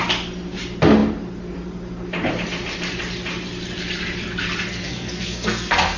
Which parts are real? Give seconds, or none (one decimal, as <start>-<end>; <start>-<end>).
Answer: 0.0-4.7